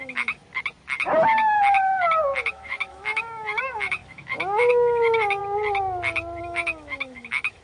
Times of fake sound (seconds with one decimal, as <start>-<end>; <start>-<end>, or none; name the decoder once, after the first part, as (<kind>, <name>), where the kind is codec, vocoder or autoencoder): 0.0-0.4 (autoencoder, DAC-VAE); 2.5-5.4; 6.4-7.6